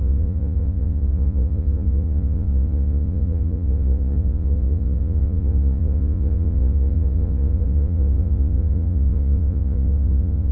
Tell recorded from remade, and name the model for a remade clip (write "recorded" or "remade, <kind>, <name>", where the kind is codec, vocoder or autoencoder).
remade, vocoder, Vocos